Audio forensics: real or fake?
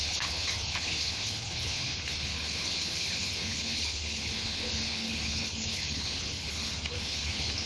fake